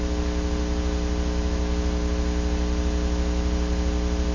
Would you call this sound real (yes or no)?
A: yes